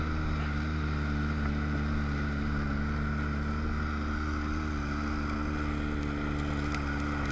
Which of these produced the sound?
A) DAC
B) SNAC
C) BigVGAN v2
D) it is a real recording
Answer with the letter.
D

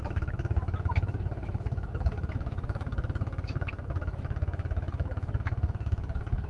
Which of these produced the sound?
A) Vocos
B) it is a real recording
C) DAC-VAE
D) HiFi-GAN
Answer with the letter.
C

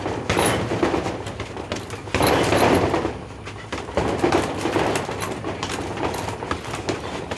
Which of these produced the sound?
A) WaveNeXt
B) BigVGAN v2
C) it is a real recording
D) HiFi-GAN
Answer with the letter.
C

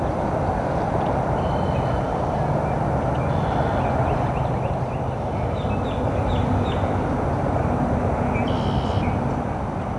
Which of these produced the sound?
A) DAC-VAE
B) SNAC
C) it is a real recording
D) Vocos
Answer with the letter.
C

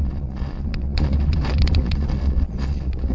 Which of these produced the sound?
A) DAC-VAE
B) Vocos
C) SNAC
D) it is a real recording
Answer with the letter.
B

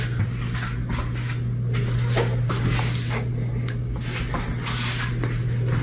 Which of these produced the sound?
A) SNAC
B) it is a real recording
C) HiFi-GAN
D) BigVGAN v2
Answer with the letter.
B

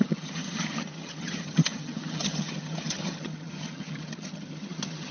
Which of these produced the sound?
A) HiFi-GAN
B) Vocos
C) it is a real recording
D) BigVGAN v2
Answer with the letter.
A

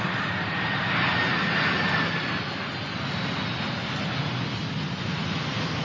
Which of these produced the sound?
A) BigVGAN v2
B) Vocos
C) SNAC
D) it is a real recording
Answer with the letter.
D